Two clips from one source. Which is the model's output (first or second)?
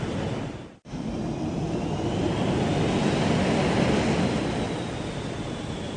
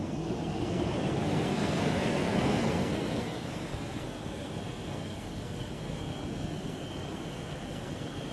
second